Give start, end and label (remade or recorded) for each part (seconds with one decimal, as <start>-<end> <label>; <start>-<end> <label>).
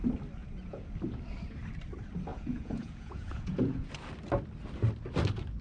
0.0-0.4 recorded; 0.4-0.9 remade; 0.9-2.3 recorded; 2.3-3.9 remade; 3.9-5.6 recorded